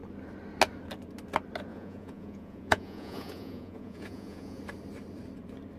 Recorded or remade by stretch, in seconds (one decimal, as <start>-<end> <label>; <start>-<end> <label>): 0.0-1.7 recorded; 1.7-4.6 remade; 4.6-5.8 recorded